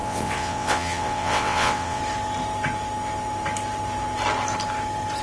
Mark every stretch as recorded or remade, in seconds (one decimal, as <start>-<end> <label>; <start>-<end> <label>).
0.0-2.0 remade; 2.0-5.2 recorded